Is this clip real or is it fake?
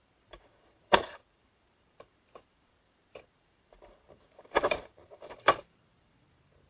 fake